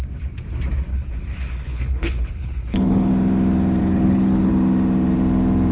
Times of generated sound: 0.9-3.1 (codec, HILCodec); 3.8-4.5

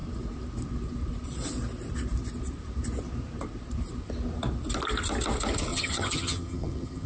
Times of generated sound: 5.7-7.1 (vocoder, HiFi-GAN)

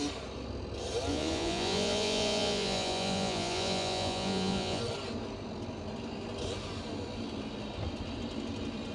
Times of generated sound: 1.1-4.8 (vocoder, Vocos)